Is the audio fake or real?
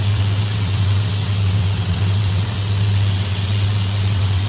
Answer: fake